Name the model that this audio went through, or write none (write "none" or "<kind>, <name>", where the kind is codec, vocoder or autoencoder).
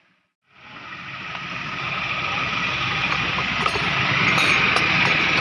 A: none